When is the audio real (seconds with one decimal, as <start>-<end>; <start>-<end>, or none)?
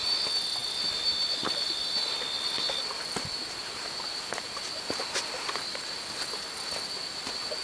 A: 0.0-7.6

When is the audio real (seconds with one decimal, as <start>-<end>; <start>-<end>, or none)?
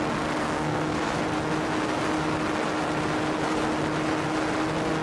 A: 0.0-0.4; 1.2-5.0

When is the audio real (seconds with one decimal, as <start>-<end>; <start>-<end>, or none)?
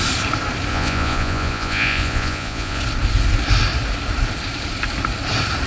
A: 0.0-0.7; 2.8-5.7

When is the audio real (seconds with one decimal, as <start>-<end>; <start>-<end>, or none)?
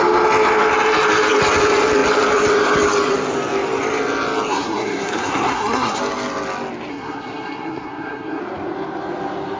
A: 0.0-4.5; 6.0-6.9; 8.4-9.6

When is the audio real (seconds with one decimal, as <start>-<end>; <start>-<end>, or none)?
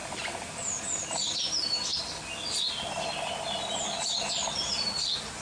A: 0.0-5.4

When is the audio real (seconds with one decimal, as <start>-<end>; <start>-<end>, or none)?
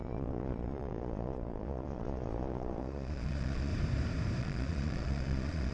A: 3.7-4.4